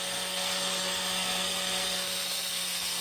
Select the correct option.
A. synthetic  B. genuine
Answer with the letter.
A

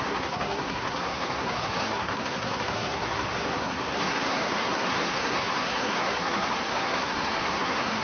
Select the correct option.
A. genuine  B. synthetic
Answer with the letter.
B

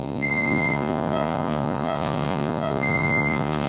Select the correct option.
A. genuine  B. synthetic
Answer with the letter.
B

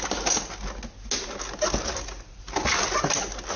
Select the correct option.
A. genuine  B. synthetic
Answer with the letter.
A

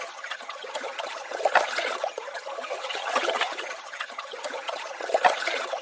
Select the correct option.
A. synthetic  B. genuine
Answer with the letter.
A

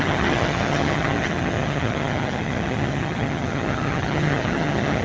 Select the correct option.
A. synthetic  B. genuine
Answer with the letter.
A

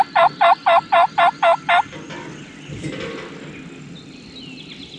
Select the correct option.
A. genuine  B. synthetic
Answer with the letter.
A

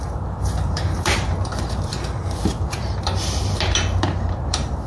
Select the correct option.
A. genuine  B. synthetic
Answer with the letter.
B